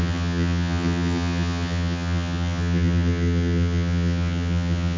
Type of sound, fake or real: fake